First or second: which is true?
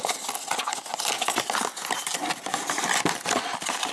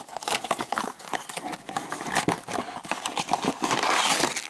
first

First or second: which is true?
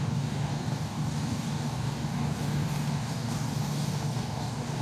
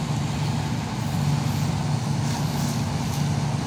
second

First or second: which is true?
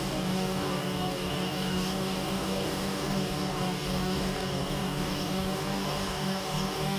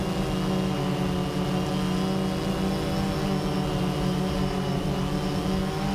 second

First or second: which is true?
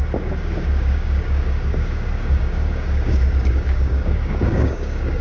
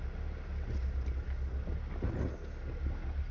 second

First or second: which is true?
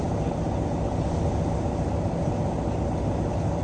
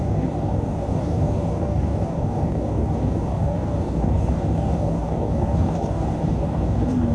first